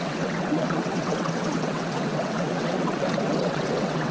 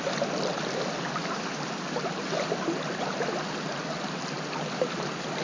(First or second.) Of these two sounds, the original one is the second